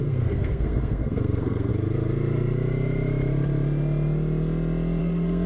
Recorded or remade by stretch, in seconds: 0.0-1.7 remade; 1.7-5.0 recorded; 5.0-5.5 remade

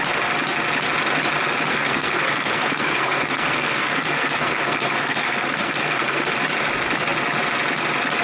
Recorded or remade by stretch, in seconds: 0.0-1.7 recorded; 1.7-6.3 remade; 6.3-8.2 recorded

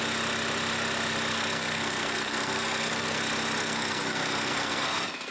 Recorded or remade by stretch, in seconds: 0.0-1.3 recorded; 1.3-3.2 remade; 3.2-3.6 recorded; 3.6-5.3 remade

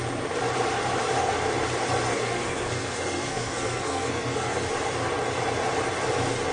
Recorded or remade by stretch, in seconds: 0.0-2.1 recorded; 2.1-4.7 remade; 4.7-6.5 recorded

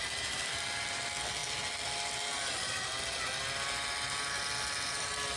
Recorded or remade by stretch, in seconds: 0.0-5.4 recorded